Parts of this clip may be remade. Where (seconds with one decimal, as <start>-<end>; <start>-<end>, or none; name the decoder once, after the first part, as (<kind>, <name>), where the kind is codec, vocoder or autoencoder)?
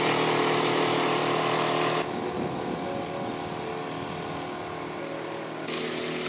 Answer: none